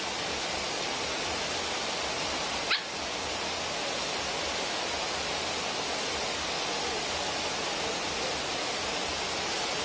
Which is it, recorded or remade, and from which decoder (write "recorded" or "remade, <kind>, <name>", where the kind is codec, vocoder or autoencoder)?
recorded